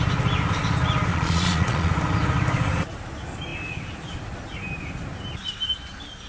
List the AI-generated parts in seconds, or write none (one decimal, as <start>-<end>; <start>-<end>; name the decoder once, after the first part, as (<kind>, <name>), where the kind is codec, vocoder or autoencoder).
1.1-1.9 (vocoder, Vocos)